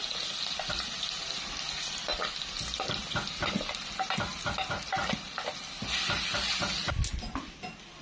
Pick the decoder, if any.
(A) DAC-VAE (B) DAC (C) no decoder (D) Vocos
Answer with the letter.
C